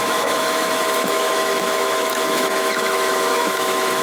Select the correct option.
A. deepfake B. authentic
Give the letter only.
A